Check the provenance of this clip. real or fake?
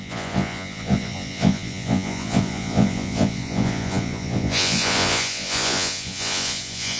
fake